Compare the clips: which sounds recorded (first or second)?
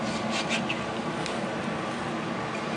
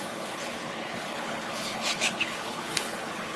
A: first